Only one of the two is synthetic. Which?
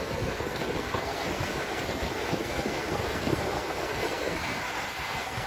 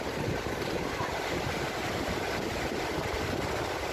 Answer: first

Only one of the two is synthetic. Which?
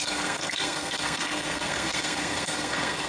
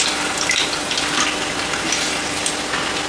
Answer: first